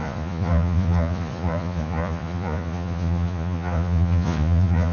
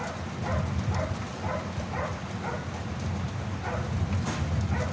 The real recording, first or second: second